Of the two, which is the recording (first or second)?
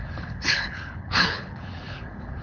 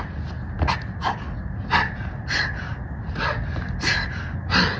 second